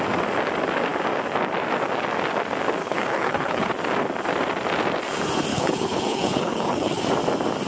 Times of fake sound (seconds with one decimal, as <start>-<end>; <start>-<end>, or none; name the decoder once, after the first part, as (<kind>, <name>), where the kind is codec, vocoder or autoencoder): 2.8-3.7 (codec, HILCodec); 5.5-7.0